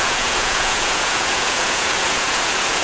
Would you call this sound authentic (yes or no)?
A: no